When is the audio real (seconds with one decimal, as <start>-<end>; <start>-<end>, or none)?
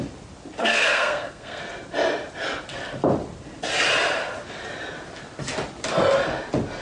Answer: 0.0-0.6; 1.6-6.8